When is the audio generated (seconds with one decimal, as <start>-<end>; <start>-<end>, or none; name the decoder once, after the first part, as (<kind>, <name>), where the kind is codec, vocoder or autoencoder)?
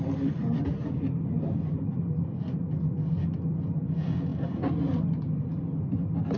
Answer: none